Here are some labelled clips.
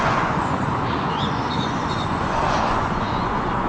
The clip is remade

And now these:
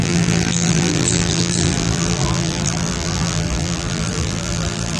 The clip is remade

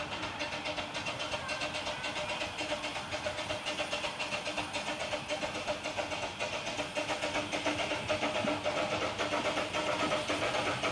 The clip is recorded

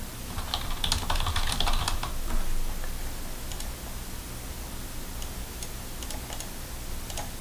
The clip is recorded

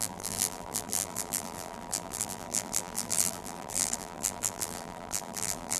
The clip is remade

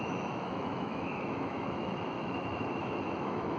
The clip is remade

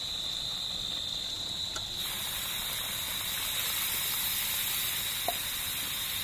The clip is recorded